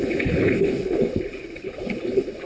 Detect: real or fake fake